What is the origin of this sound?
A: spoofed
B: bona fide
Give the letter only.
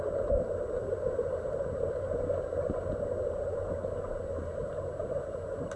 B